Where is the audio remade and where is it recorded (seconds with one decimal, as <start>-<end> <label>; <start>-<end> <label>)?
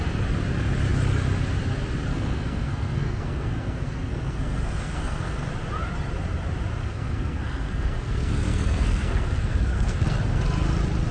0.0-2.1 recorded; 2.1-5.5 remade; 5.5-6.8 recorded; 6.8-10.4 remade; 10.4-11.1 recorded